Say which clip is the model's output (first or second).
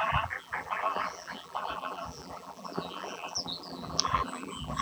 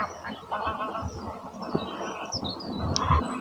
first